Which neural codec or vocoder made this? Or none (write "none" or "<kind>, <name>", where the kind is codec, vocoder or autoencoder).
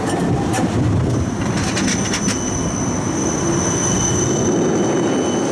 none